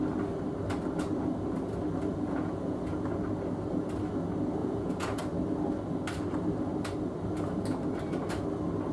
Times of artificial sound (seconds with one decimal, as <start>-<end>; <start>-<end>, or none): 2.1-2.8; 4.6-5.2